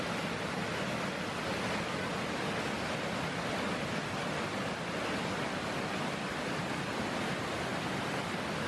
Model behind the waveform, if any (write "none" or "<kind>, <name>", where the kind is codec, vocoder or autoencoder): none